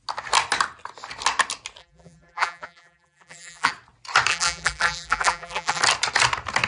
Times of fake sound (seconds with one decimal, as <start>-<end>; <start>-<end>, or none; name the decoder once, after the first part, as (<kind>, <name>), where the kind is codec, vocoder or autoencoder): 1.8-3.7 (vocoder, BigVGAN v2); 4.3-5.8